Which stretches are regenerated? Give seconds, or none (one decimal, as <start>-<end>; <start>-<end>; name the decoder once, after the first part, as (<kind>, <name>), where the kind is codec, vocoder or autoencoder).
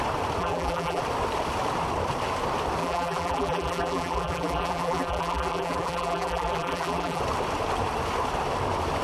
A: 0.4-1.0 (vocoder, BigVGAN v2); 2.8-7.2